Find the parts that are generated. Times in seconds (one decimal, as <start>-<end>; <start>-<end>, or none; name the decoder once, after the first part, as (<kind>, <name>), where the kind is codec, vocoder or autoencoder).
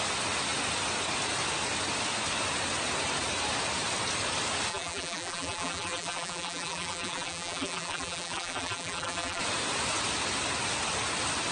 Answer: 4.7-9.4 (vocoder, BigVGAN v2)